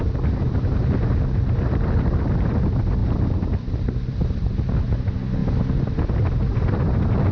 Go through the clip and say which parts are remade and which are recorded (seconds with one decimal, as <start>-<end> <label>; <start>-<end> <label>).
0.0-3.0 recorded; 3.0-4.4 remade; 4.4-5.4 recorded; 5.4-6.1 remade; 6.1-7.3 recorded